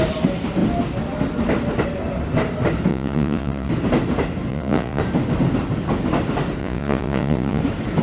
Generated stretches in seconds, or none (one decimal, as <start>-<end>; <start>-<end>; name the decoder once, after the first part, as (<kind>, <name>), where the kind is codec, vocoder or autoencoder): 2.9-3.7 (vocoder, Vocos); 4.5-5.0; 6.6-7.6